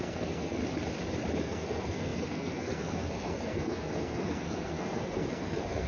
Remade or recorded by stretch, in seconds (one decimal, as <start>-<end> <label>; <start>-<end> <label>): 0.0-0.6 remade; 0.6-1.4 recorded; 1.4-5.9 remade

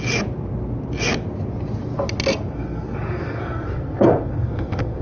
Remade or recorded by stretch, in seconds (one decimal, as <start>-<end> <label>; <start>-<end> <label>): 0.0-2.5 recorded; 2.5-5.0 remade

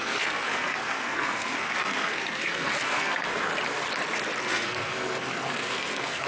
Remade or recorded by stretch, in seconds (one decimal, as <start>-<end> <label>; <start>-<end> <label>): 0.0-3.5 remade; 3.5-4.4 recorded; 4.4-6.3 remade

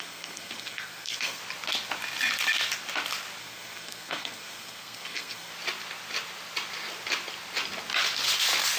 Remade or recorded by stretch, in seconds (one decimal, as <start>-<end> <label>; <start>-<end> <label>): 0.0-1.4 remade; 1.4-3.4 recorded; 3.4-5.5 remade; 5.5-8.8 recorded

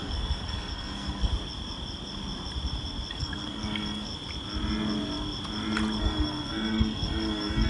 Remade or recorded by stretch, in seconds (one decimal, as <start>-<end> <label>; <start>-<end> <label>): 0.0-1.3 remade; 1.3-3.1 recorded; 3.1-4.1 remade; 4.1-6.0 recorded; 6.0-7.7 remade

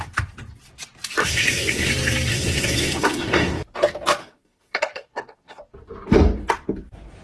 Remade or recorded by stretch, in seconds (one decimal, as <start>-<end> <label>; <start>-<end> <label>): 0.0-1.2 recorded; 1.2-1.9 remade; 1.9-2.3 recorded; 2.3-3.6 remade; 3.6-4.2 recorded; 4.2-5.6 remade; 5.6-7.2 recorded

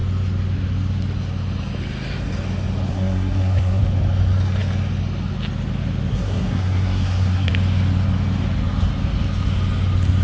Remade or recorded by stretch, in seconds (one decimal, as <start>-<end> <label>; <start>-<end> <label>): 0.0-2.9 recorded; 2.9-3.8 remade; 3.8-6.1 recorded; 6.1-7.5 remade; 7.5-10.2 recorded

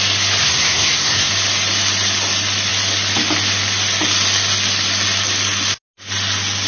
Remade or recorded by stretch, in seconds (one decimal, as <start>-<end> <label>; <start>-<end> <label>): 0.0-0.4 recorded; 0.4-1.3 remade; 1.3-6.7 recorded